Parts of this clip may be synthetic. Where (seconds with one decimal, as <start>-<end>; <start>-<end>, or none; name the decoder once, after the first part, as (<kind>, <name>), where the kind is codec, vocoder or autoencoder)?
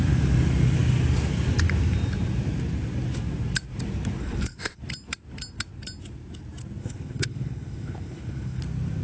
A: 4.2-4.8 (codec, HILCodec); 6.8-8.6